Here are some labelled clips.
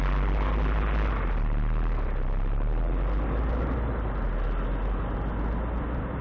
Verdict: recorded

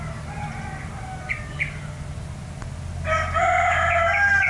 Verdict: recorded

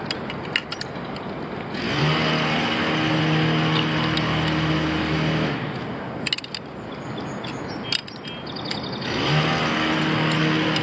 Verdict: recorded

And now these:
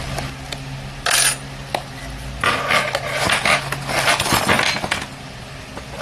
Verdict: recorded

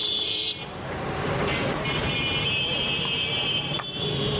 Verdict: remade